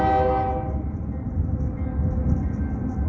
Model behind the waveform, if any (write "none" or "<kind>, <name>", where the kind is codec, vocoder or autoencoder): none